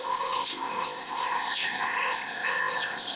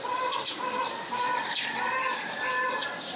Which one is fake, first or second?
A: first